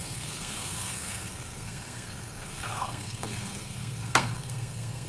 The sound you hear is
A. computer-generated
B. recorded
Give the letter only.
A